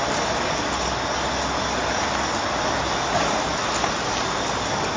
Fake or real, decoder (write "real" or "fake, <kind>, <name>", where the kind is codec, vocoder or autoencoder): real